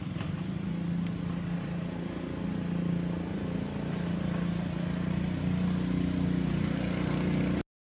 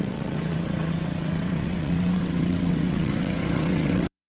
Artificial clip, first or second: second